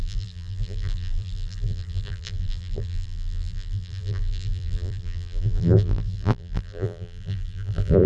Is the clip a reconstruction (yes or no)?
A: yes